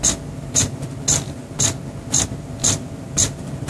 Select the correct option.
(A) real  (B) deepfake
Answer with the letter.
A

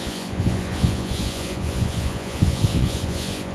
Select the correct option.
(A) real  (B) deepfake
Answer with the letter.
B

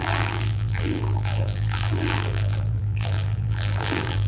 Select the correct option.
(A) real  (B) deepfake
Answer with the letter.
B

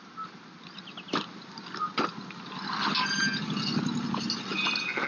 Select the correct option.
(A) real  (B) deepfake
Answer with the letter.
A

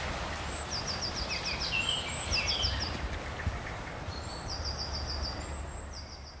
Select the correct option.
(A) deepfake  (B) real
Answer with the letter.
B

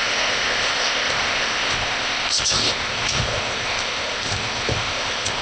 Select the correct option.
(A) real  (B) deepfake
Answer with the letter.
B